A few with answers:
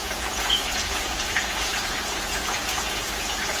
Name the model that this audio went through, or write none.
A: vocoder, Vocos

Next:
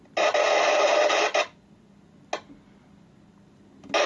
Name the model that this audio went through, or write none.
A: none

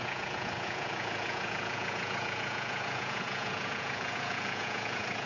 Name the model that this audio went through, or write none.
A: vocoder, Vocos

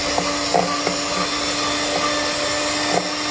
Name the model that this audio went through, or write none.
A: none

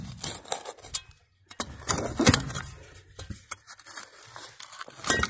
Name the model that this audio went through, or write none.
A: none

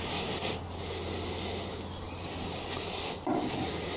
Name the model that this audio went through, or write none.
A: none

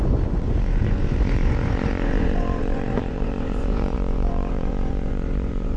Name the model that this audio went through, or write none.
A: vocoder, Vocos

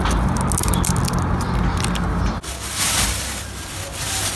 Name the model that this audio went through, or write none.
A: none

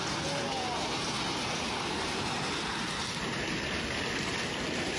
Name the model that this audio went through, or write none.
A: none